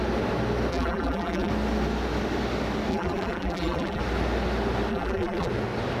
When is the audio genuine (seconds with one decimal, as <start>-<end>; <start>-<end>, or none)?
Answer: 0.0-0.7; 1.5-2.9; 4.0-4.9; 5.5-6.0